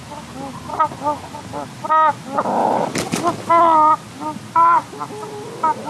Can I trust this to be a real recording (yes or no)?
yes